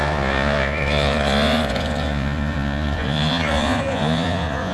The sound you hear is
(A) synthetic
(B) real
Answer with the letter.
A